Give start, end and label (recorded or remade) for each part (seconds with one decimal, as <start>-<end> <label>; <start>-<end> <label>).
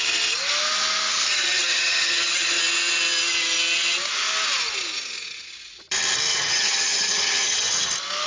0.0-1.1 recorded; 1.1-2.6 remade; 2.6-6.3 recorded; 6.3-7.9 remade; 7.9-8.3 recorded